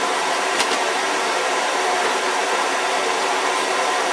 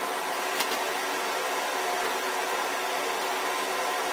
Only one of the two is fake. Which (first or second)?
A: first